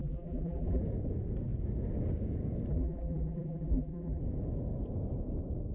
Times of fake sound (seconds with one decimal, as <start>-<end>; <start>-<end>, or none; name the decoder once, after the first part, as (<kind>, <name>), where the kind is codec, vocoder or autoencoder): 0.0-0.8 (vocoder, BigVGAN v2); 2.7-4.2

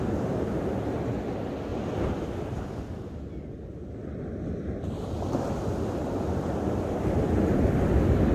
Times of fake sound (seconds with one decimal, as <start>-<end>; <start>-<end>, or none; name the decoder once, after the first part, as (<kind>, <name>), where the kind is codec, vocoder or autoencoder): none

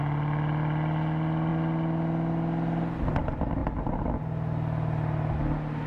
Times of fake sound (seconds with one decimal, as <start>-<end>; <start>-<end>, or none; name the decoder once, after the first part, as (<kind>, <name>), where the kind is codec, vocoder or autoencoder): none

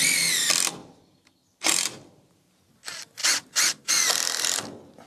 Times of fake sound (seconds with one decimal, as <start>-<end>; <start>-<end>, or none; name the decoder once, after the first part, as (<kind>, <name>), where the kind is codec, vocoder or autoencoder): 0.8-2.6 (vocoder, BigVGAN v2); 3.2-3.9

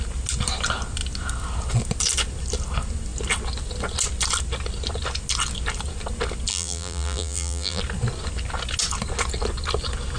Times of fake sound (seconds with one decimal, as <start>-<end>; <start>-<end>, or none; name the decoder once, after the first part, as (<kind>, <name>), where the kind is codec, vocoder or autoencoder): 6.5-7.8 (vocoder, BigVGAN v2)

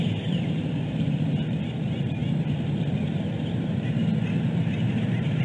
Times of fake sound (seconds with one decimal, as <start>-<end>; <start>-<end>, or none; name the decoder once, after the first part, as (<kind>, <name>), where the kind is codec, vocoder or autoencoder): 0.0-2.2 (vocoder, BigVGAN v2); 3.2-4.1; 5.0-5.4